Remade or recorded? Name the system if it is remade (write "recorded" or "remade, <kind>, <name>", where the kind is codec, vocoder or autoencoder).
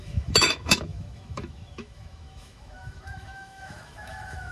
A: remade, autoencoder, DAC-VAE